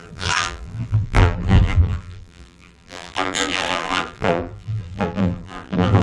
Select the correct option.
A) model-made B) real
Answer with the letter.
A